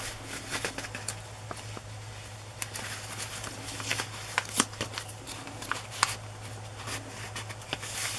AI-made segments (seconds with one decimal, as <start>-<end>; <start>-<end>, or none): none